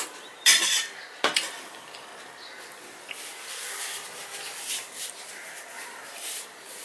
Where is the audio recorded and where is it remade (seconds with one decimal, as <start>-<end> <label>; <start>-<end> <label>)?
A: 0.0-2.1 remade; 2.1-5.4 recorded; 5.4-6.8 remade